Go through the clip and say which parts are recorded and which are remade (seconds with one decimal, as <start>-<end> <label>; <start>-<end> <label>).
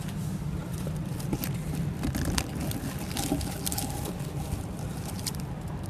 0.0-5.9 recorded